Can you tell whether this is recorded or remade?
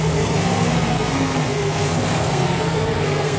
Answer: remade